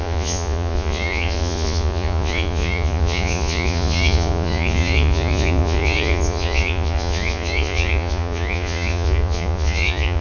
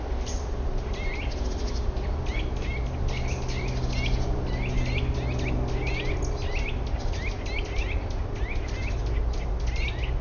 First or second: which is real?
second